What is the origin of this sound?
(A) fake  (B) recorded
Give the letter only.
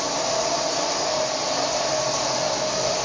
B